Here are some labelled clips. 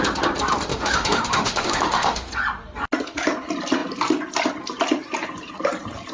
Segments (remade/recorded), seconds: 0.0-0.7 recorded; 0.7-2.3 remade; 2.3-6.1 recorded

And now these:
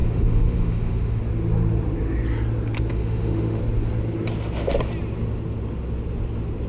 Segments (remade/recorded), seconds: 0.0-1.2 remade; 1.2-2.9 recorded; 2.9-3.6 remade; 3.6-6.7 recorded

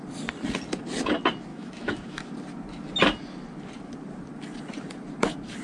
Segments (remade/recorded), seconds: 0.0-1.5 recorded; 1.5-2.3 remade; 2.3-5.6 recorded

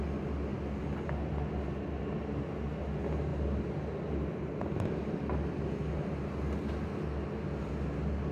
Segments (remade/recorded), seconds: 0.0-8.3 recorded

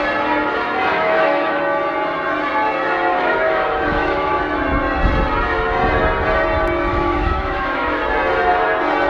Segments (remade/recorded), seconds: 0.0-0.9 recorded; 0.9-1.6 remade; 1.6-3.1 recorded; 3.1-4.4 remade; 4.4-6.9 recorded; 6.9-8.0 remade; 8.0-9.1 recorded

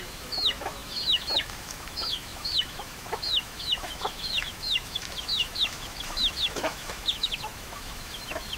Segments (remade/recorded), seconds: 0.0-8.6 remade

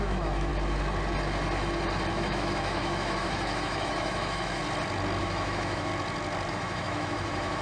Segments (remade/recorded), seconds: 0.0-0.5 remade; 0.5-2.1 recorded; 2.1-4.6 remade; 4.6-5.2 recorded; 5.2-5.9 remade; 5.9-6.5 recorded; 6.5-7.6 remade